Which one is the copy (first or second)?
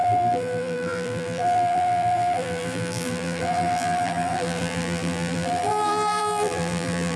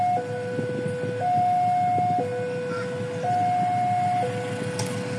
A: first